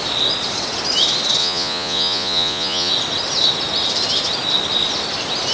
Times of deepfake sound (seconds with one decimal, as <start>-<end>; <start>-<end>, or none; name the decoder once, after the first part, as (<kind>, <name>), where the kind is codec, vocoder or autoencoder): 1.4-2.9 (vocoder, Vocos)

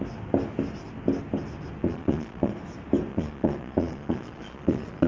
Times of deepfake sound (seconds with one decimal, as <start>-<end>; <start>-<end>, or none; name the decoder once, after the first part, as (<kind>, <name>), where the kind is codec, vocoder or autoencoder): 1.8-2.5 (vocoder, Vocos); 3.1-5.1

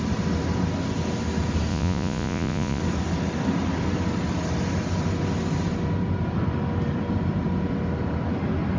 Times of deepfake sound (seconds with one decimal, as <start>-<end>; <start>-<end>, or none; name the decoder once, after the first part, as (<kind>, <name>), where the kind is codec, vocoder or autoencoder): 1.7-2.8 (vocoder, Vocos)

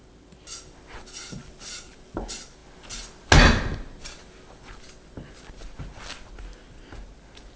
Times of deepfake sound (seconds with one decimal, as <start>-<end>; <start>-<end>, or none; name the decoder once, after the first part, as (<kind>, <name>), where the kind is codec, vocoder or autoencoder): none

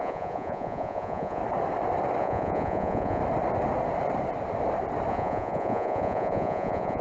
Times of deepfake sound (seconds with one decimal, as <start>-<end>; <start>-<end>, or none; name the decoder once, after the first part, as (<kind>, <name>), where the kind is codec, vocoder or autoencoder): 0.0-1.4 (vocoder, Vocos); 2.2-3.2; 5.1-7.0

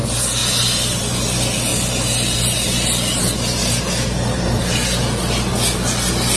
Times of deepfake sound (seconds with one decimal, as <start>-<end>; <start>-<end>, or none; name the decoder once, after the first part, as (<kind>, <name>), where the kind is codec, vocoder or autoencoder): none

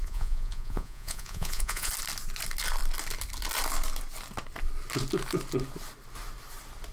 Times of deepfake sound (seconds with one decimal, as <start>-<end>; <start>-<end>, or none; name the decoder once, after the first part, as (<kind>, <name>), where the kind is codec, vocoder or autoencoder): 0.0-1.9 (vocoder, Vocos)

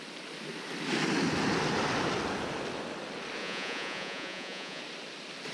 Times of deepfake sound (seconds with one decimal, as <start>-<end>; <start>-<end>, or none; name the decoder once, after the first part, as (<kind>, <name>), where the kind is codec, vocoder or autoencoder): 3.4-4.8 (vocoder, Vocos)